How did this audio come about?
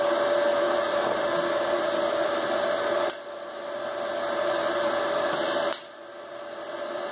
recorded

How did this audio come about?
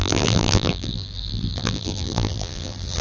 remade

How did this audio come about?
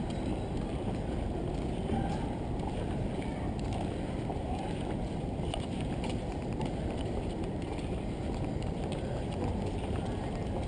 remade